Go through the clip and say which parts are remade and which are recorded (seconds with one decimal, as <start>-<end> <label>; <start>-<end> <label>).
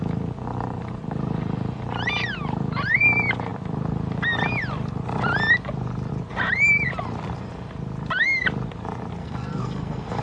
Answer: 0.0-9.2 recorded; 9.2-10.2 remade